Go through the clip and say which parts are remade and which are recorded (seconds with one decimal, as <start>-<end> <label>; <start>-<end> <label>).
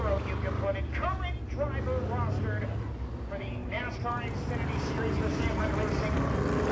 0.0-3.6 recorded; 3.6-5.6 remade; 5.6-6.7 recorded